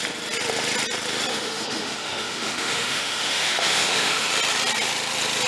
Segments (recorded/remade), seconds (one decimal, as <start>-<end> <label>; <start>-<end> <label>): 0.0-1.3 recorded; 1.3-4.3 remade; 4.3-5.5 recorded